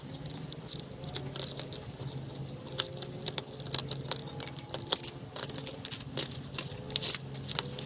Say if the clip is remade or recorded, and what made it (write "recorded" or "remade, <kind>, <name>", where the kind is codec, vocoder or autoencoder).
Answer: recorded